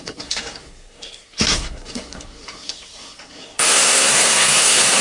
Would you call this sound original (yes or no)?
no